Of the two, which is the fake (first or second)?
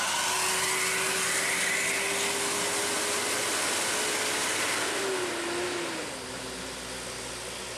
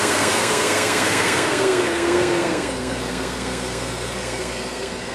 second